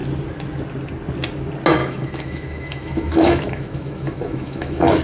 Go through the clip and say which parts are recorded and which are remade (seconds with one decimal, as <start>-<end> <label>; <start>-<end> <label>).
0.0-1.8 recorded; 1.8-5.0 remade